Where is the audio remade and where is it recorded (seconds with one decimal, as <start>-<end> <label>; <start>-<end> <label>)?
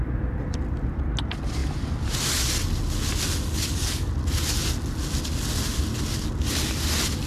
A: 0.0-3.5 recorded; 3.5-4.1 remade; 4.1-7.3 recorded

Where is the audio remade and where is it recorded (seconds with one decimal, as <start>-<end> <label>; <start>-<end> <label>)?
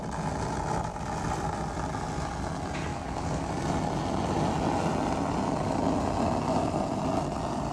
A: 0.0-2.9 recorded; 2.9-3.5 remade; 3.5-7.7 recorded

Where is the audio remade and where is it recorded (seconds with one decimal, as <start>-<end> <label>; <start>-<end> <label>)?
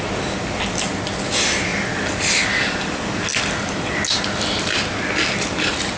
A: 0.0-6.0 recorded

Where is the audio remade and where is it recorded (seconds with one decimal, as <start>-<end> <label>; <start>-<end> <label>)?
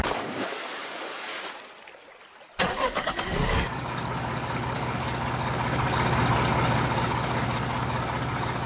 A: 0.0-1.3 remade; 1.3-2.7 recorded; 2.7-8.7 remade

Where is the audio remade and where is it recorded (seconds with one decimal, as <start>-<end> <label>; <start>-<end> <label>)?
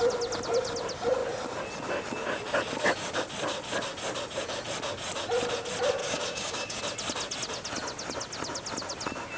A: 0.0-6.0 recorded; 6.0-6.8 remade; 6.8-9.4 recorded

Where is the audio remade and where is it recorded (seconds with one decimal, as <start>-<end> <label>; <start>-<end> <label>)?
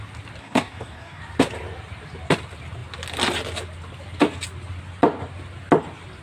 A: 0.0-0.4 recorded; 0.4-1.2 remade; 1.2-6.2 recorded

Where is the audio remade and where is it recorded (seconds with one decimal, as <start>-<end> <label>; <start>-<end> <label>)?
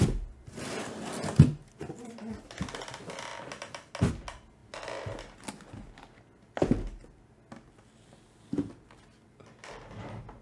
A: 0.0-10.4 recorded